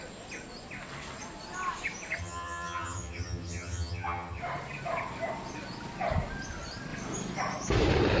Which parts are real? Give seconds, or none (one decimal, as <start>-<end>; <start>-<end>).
0.0-2.2; 4.4-8.2